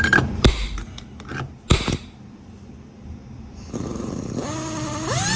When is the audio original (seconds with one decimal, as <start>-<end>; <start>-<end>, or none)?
0.0-5.4